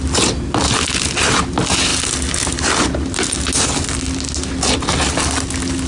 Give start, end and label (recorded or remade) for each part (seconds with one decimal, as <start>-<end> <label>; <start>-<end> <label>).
0.0-5.9 recorded